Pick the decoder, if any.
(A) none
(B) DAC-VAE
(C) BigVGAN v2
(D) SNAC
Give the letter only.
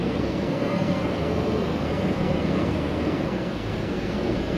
D